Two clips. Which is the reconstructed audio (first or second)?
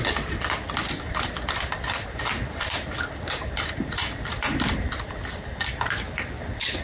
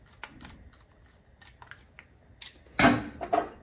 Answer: first